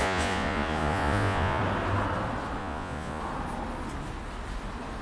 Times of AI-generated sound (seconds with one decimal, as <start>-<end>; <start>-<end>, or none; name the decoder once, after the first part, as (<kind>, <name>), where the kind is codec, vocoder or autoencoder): 0.0-1.6 (vocoder, Vocos); 2.6-3.2